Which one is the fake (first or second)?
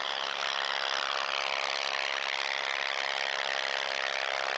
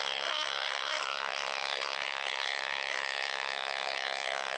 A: second